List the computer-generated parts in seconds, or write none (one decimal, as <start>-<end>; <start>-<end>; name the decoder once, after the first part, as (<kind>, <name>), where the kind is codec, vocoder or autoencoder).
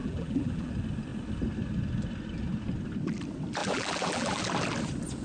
0.0-0.7 (vocoder, BigVGAN v2); 3.6-4.4